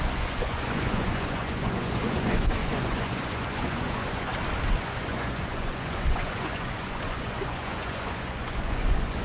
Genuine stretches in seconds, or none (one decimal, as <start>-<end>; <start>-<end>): 4.3-4.8